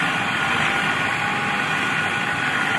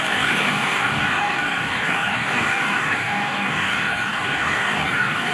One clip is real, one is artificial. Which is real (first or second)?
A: first